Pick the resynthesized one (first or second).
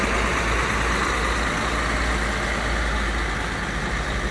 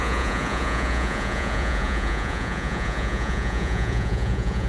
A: second